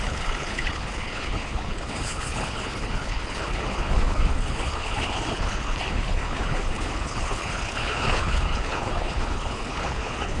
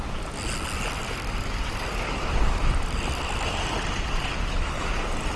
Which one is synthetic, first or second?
first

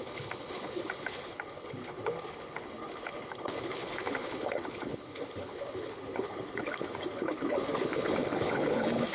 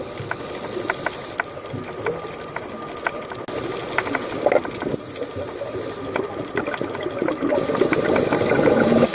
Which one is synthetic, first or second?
first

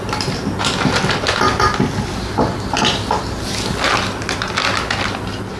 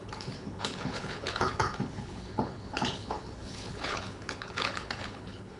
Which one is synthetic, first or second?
second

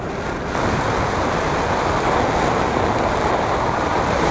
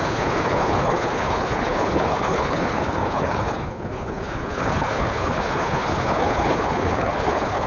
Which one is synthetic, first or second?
second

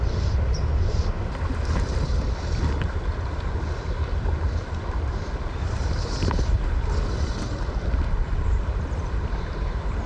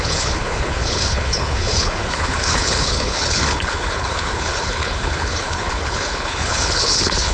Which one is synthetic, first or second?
second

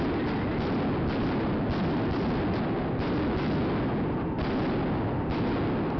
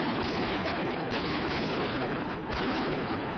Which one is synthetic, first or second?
second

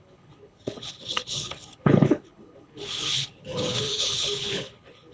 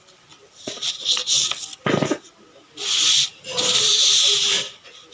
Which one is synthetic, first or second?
first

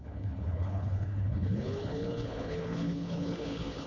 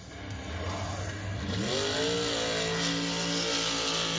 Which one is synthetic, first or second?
first